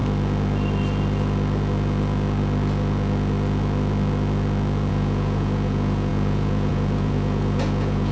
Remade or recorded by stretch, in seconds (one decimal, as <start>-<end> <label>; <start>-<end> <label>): 0.0-4.9 recorded; 4.9-8.1 remade